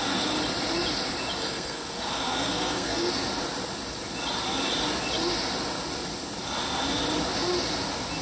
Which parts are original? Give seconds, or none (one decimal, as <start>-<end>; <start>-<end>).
0.0-1.4; 3.1-8.2